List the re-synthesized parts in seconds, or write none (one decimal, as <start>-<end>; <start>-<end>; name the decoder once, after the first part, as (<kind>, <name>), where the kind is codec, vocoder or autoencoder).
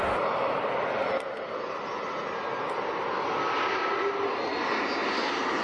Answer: none